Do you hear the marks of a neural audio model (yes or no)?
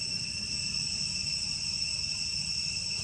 no